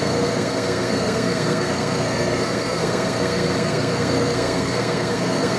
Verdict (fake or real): fake